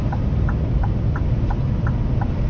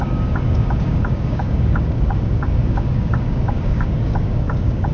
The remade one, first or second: second